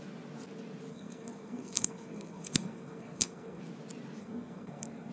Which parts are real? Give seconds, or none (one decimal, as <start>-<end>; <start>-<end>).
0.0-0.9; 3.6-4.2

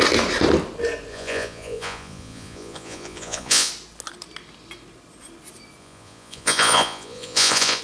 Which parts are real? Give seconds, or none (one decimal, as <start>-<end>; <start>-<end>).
0.0-1.1; 3.7-5.8

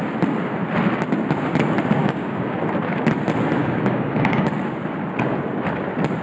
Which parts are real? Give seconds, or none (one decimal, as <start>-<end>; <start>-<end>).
0.0-2.0; 2.6-3.6; 4.5-6.2

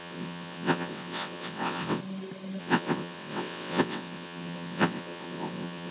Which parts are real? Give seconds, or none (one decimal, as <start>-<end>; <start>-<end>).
2.0-2.6